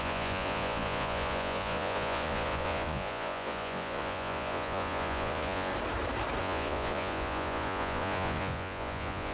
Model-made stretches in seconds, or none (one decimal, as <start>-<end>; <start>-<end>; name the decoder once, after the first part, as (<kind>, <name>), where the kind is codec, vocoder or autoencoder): 0.0-5.7 (vocoder, Vocos); 6.4-9.3